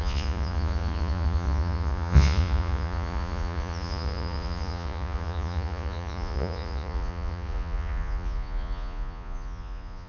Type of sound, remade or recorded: remade